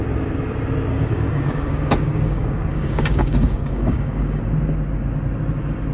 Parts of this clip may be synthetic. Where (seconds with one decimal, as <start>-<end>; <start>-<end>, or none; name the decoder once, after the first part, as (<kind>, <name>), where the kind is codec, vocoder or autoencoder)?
0.9-4.4 (codec, DAC)